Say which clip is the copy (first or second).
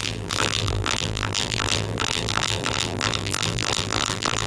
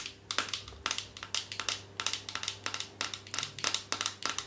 first